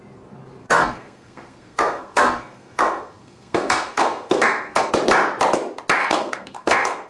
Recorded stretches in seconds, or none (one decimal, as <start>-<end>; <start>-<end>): 0.0-0.6; 4.9-6.0